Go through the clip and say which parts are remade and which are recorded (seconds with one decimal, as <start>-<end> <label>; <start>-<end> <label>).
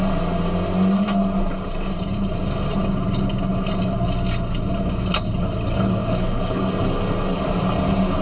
0.0-6.0 recorded; 6.0-6.6 remade; 6.6-8.2 recorded